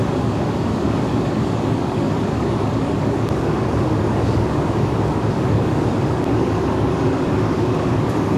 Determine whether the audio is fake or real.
fake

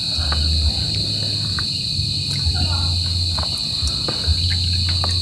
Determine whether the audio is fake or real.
real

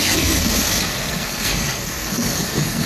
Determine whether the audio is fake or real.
fake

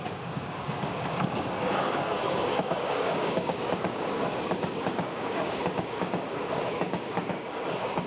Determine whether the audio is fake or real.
fake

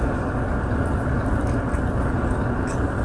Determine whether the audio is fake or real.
real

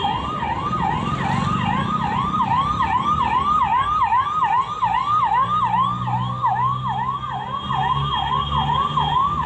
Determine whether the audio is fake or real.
real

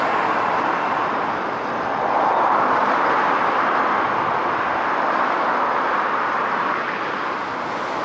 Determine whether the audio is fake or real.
real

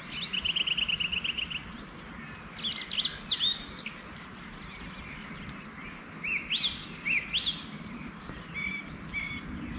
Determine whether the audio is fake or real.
real